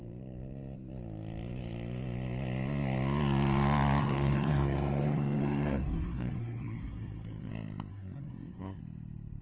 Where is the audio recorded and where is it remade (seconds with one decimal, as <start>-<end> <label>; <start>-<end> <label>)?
0.0-4.0 recorded; 4.0-7.5 remade; 7.5-7.9 recorded; 7.9-8.8 remade; 8.8-9.4 recorded